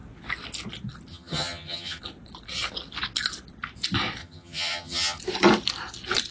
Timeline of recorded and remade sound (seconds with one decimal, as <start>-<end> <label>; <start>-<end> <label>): 0.0-1.1 recorded; 1.1-2.0 remade; 2.0-4.2 recorded; 4.2-5.2 remade; 5.2-6.3 recorded